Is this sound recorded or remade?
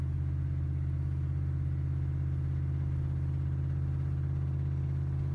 recorded